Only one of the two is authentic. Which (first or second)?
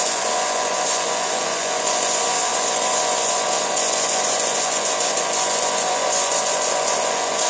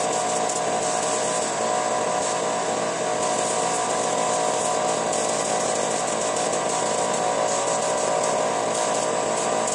second